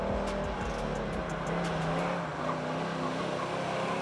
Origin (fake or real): real